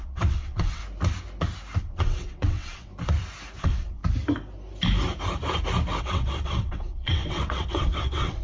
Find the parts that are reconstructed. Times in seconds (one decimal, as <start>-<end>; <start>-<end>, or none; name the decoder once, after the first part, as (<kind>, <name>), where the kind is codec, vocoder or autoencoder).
0.0-0.8 (vocoder, WaveNeXt); 1.8-2.9; 3.6-4.0; 6.0-8.4